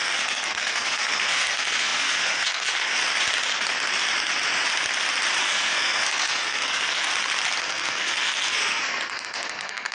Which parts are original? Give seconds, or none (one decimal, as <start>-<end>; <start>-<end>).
3.0-5.4; 7.1-7.6